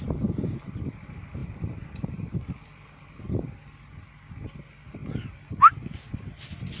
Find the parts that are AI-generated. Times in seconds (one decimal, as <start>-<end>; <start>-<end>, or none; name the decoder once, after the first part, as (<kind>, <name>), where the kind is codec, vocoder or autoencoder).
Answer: 1.4-3.2 (vocoder, BigVGAN v2)